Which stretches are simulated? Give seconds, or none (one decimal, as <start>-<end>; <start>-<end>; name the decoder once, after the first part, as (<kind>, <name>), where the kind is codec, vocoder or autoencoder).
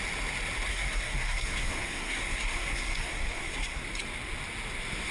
0.7-3.8 (codec, SNAC)